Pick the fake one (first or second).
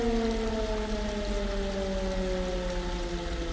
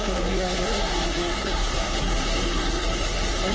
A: second